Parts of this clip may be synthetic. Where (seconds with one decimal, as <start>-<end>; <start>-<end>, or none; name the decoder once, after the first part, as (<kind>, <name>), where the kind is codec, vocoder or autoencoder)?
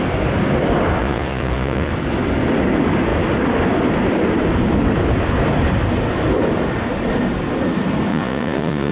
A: 1.0-1.9 (vocoder, Vocos); 8.1-8.9